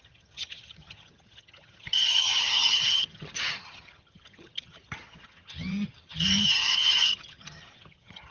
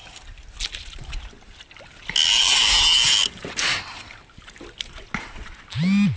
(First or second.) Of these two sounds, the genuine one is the second